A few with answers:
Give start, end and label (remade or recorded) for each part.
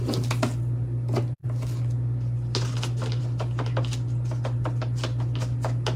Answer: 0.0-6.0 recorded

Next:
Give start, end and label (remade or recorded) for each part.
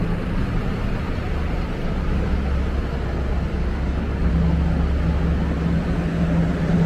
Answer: 0.0-1.8 recorded; 1.8-2.3 remade; 2.3-3.5 recorded; 3.5-4.3 remade; 4.3-6.9 recorded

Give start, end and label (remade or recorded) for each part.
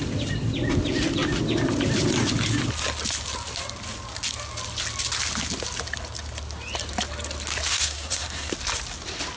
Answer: 0.0-7.7 recorded; 7.7-8.5 remade; 8.5-9.4 recorded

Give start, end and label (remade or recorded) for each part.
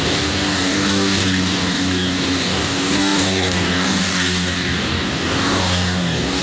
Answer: 0.0-6.4 remade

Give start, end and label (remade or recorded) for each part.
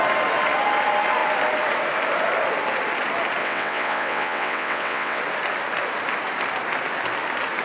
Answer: 0.0-3.4 recorded; 3.4-5.2 remade; 5.2-7.6 recorded